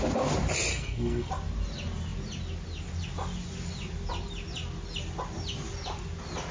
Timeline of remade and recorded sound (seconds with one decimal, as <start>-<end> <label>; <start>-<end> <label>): 0.0-0.7 recorded; 0.7-1.3 remade; 1.3-6.5 recorded